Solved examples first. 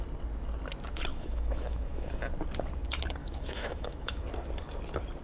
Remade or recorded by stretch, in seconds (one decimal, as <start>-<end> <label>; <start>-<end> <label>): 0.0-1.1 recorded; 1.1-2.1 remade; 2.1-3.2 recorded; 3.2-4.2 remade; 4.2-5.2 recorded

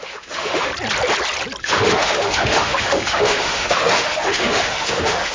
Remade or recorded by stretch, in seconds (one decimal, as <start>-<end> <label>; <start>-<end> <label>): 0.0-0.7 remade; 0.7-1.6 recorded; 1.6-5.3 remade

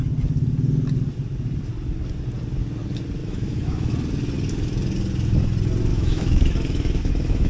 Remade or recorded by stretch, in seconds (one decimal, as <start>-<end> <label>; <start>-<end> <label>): 0.0-3.2 recorded; 3.2-3.9 remade; 3.9-5.9 recorded; 5.9-7.5 remade

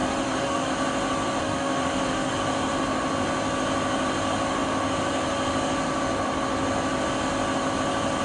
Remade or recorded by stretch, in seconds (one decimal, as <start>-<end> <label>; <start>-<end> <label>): 0.0-0.7 remade; 0.7-1.4 recorded; 1.4-2.3 remade; 2.3-8.2 recorded

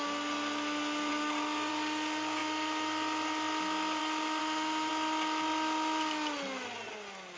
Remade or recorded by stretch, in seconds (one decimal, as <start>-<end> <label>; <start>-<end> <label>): 0.0-4.4 recorded; 4.4-4.9 remade; 4.9-7.4 recorded